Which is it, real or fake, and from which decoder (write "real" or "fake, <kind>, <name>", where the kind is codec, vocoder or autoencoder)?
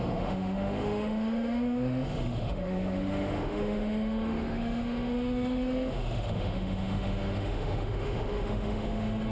fake, autoencoder, DAC-VAE